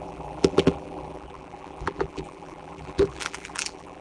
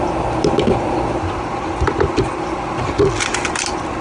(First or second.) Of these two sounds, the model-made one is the first